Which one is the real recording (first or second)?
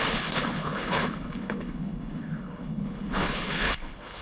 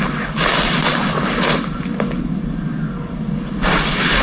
second